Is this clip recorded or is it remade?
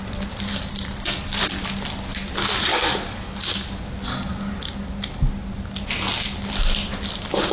recorded